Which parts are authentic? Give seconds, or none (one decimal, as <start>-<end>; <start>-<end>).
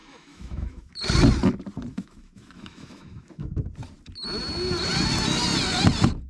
0.9-1.9; 3.6-6.3